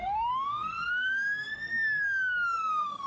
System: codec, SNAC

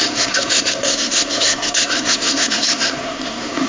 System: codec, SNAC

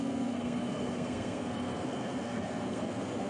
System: codec, SNAC